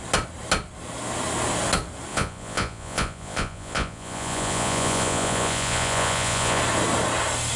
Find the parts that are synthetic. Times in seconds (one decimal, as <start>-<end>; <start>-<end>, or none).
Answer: 2.1-6.6